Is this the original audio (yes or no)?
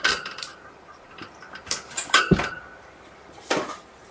no